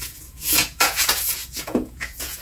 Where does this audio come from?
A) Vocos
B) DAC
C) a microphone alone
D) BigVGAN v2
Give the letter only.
A